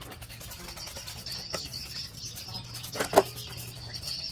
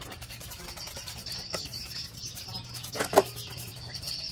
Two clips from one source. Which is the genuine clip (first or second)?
first